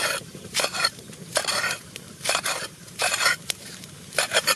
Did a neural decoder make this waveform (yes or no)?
yes